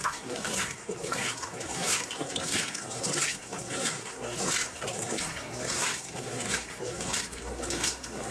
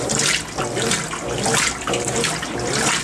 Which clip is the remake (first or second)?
first